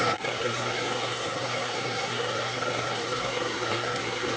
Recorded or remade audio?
remade